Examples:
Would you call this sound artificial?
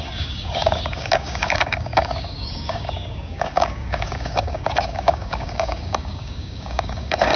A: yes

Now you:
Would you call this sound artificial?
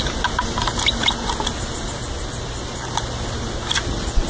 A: no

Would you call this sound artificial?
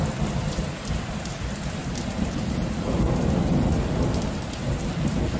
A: no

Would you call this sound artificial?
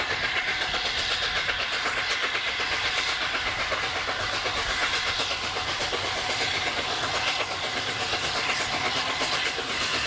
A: no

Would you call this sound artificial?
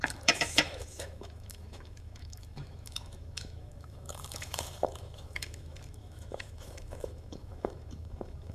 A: yes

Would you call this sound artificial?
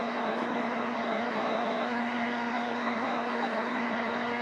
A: yes